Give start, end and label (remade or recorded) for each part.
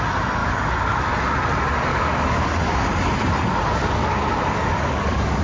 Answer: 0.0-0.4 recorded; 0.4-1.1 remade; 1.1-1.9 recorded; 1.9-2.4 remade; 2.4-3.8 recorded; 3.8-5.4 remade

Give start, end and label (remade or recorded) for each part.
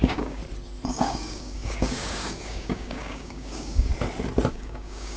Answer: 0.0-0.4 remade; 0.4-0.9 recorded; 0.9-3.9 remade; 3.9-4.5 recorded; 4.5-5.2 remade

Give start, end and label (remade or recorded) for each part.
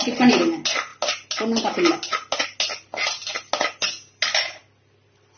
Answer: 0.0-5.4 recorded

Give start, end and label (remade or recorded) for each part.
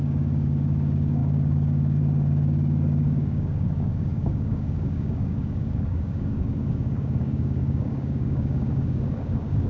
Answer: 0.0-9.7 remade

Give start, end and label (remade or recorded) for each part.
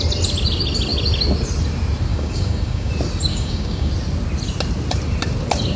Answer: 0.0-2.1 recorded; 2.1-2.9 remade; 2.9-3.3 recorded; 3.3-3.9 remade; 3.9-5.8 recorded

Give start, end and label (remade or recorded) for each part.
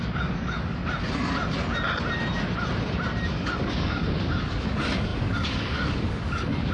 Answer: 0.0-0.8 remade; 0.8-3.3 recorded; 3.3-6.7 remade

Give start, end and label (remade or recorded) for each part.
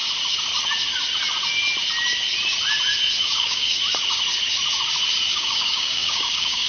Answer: 0.0-3.2 recorded; 3.2-3.8 remade; 3.8-5.3 recorded; 5.3-6.7 remade